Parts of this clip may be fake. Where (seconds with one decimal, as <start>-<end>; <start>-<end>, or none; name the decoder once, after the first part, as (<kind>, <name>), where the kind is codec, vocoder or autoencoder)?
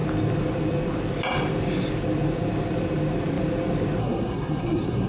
4.0-5.1 (codec, SNAC)